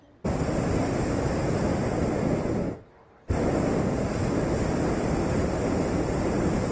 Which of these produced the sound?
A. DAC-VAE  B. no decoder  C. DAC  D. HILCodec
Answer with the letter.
B